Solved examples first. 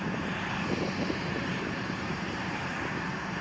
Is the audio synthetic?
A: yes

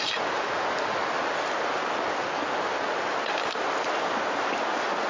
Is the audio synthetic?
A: no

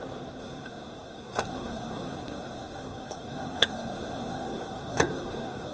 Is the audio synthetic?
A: yes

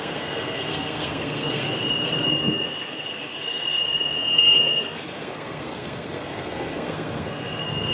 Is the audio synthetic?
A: yes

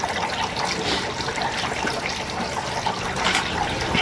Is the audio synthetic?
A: no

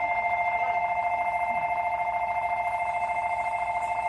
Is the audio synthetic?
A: no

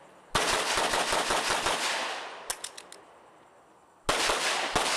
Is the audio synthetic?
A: no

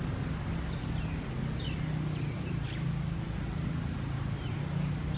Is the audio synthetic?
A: no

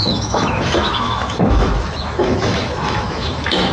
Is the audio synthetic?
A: yes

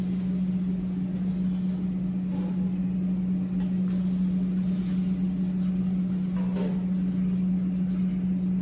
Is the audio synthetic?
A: no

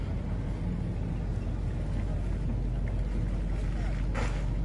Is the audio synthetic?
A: no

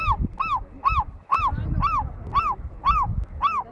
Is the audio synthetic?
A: no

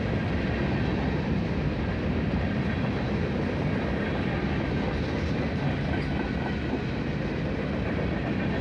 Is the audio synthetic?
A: no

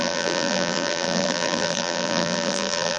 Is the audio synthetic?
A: yes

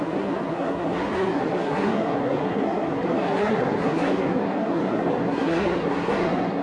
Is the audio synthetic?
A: yes